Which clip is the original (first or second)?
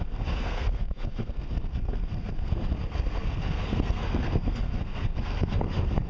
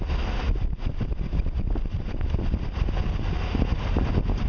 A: second